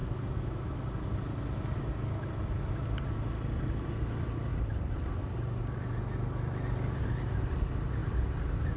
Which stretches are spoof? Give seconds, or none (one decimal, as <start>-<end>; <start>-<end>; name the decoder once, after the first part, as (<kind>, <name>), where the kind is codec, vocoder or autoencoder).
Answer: 0.0-0.8 (autoencoder, DAC-VAE)